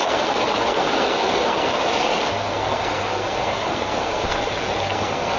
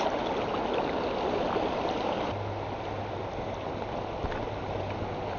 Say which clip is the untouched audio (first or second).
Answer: second